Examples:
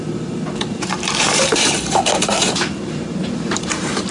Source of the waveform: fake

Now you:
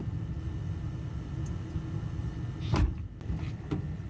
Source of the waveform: real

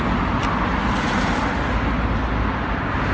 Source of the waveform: real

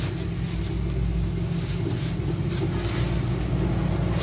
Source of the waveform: real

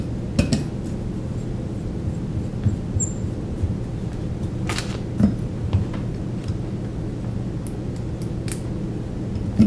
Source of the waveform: real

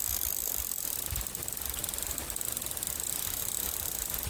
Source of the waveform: real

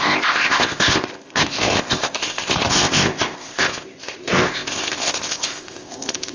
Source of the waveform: fake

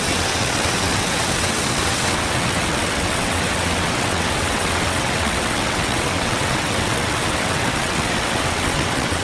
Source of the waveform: fake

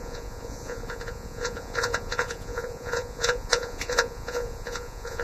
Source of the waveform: fake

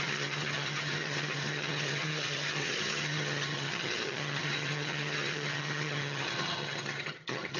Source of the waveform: fake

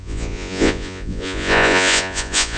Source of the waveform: fake